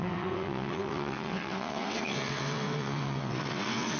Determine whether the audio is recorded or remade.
remade